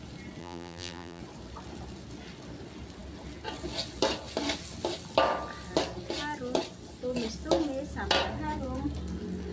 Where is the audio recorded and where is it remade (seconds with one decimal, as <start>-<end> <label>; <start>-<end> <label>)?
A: 0.0-0.4 recorded; 0.4-1.2 remade; 1.2-9.5 recorded